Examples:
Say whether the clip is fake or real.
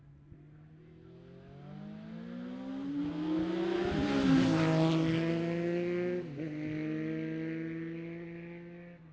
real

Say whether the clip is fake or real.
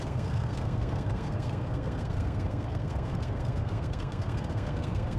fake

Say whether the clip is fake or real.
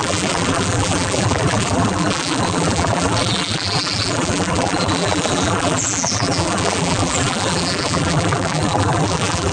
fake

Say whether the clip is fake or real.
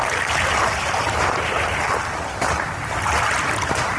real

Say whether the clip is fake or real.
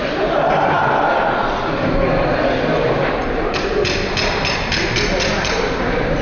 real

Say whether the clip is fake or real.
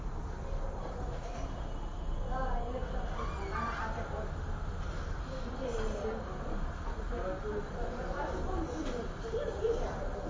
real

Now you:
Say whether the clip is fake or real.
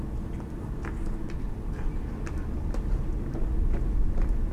real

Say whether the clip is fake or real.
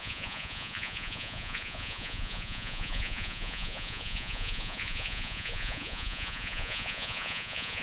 fake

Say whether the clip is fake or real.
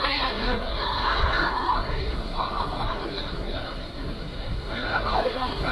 fake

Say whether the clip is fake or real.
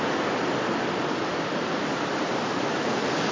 real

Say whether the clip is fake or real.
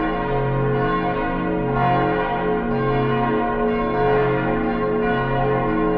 real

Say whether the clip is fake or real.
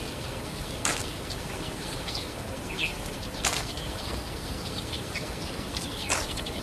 fake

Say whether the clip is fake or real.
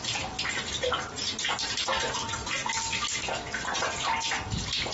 real